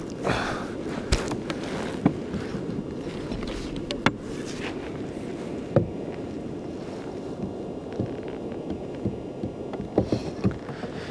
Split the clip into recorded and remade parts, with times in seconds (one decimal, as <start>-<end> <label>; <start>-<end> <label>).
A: 0.0-11.1 recorded